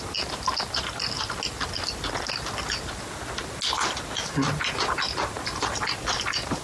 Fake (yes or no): no